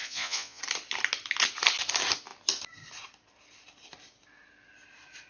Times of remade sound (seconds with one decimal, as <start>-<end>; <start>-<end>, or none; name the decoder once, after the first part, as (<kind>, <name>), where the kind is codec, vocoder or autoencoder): 0.0-0.6 (vocoder, Vocos)